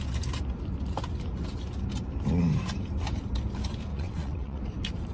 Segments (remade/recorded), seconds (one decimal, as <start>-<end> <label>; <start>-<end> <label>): 0.0-3.9 recorded; 3.9-4.6 remade; 4.6-5.1 recorded